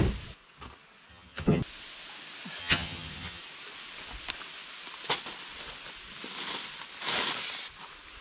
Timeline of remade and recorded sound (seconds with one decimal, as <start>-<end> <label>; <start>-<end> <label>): 0.0-1.1 recorded; 1.1-1.6 remade; 1.6-2.6 recorded; 2.6-3.4 remade; 3.4-8.2 recorded